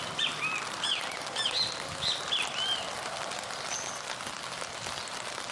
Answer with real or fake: real